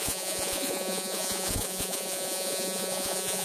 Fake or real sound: fake